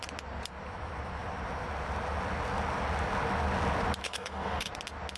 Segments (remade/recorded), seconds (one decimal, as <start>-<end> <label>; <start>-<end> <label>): 0.0-4.0 recorded; 4.0-4.7 remade; 4.7-5.2 recorded